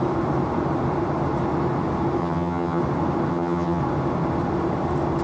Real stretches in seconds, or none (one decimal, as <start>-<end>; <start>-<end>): 0.0-2.2; 2.8-3.3; 3.8-5.2